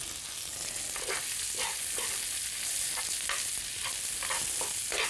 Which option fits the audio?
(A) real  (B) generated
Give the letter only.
A